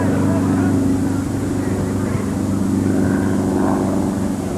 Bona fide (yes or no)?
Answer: yes